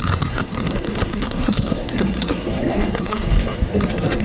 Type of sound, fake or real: fake